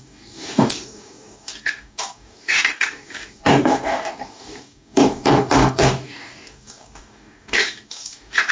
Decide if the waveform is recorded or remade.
remade